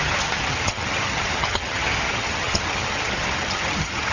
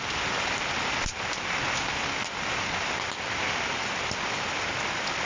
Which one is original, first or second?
second